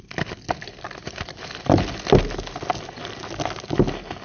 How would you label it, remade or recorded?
recorded